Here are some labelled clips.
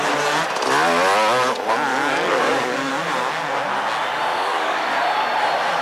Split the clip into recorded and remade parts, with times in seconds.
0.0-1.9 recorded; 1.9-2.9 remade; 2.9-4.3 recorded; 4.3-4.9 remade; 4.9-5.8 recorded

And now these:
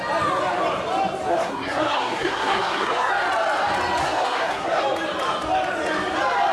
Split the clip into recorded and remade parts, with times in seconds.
0.0-1.3 recorded; 1.3-3.1 remade; 3.1-4.0 recorded; 4.0-4.8 remade; 4.8-6.5 recorded